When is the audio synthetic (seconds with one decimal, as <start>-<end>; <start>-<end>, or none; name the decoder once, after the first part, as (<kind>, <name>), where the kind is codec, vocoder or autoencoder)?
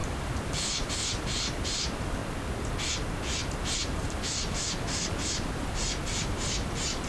0.0-2.2 (vocoder, BigVGAN v2); 3.6-7.1